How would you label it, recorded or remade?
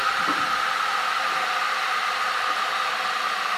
recorded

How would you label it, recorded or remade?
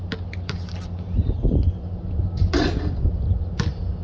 recorded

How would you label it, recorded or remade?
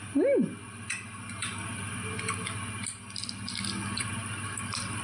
recorded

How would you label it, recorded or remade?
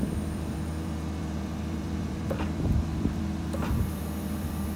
remade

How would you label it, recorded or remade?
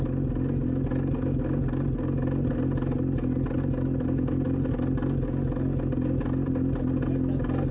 recorded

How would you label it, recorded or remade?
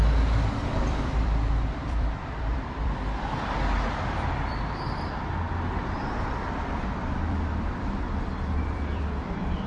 remade